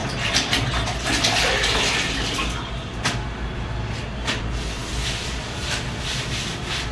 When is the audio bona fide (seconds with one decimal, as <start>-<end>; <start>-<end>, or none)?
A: 0.0-6.9